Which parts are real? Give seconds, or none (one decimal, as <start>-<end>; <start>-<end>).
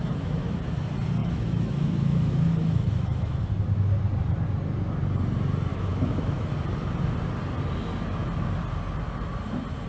0.6-1.2; 3.4-5.7; 6.5-9.9